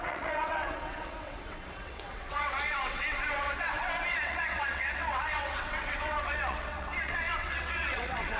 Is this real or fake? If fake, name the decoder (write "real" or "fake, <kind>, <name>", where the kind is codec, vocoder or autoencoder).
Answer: fake, vocoder, WaveNeXt